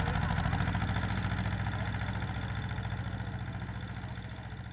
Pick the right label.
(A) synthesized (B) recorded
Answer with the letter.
B